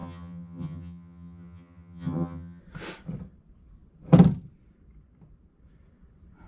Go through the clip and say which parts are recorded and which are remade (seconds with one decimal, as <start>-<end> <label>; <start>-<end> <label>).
0.0-2.6 remade; 2.6-6.5 recorded